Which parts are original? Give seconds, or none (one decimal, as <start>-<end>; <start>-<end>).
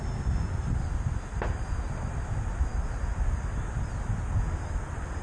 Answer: 0.0-5.2